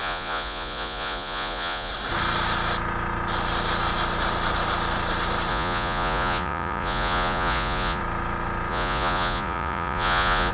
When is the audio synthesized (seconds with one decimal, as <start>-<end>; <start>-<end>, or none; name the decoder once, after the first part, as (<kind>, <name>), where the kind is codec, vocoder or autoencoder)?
0.0-1.9 (vocoder, Vocos); 5.5-8.0; 8.7-10.5